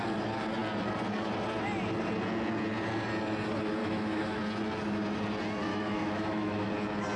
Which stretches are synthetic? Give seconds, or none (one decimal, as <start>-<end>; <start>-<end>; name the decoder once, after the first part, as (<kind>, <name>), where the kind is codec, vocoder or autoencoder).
3.8-4.4 (autoencoder, DAC-VAE); 5.7-6.7